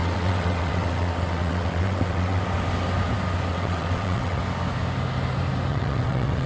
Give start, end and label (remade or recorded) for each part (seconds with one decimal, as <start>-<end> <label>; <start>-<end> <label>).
0.0-2.4 remade; 2.4-3.5 recorded; 3.5-4.4 remade; 4.4-5.7 recorded; 5.7-6.5 remade